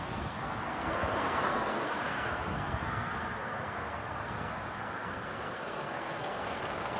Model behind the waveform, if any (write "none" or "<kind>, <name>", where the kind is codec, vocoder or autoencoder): codec, SNAC